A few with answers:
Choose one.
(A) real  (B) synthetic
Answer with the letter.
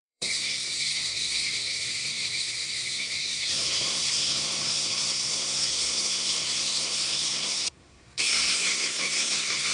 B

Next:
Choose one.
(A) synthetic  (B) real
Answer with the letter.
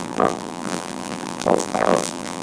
A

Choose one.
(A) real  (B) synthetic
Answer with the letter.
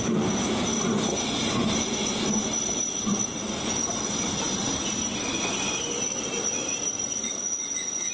A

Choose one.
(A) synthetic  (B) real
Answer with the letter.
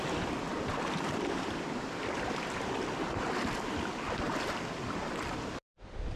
A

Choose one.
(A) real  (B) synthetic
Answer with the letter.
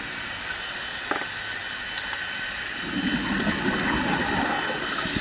A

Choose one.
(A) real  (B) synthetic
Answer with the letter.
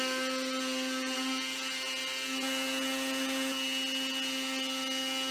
A